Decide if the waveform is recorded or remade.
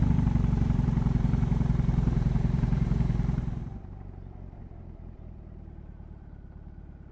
remade